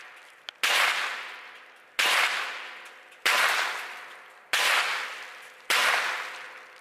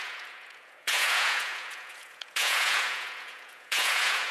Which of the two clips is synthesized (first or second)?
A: second